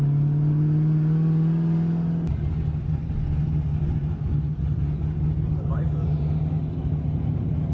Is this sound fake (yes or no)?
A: no